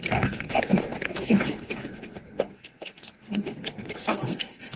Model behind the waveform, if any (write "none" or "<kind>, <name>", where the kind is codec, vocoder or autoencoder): codec, SNAC